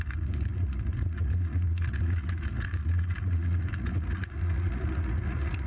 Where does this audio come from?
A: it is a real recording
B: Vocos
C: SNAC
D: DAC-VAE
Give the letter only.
B